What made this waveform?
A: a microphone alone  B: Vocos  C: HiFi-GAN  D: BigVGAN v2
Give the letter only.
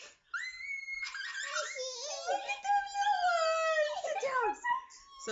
A